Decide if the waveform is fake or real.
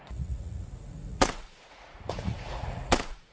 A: fake